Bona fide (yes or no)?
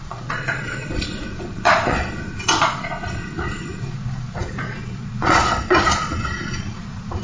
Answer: no